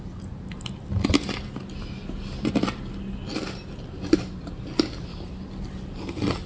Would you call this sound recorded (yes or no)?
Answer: yes